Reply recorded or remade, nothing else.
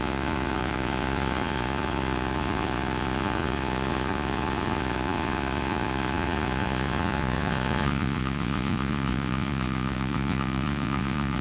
remade